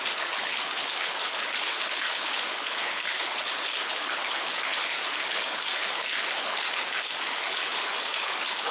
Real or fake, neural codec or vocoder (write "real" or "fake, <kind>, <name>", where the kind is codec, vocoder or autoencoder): fake, codec, HILCodec